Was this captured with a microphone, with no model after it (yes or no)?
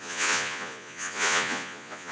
no